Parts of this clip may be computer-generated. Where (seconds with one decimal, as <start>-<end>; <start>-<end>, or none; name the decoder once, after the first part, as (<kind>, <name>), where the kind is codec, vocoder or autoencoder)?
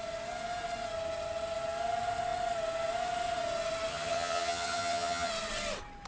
3.9-5.3 (vocoder, HiFi-GAN)